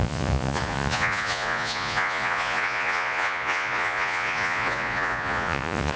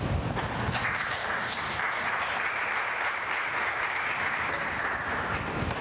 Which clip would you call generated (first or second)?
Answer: first